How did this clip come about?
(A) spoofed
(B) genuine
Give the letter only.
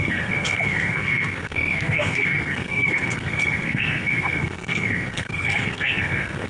A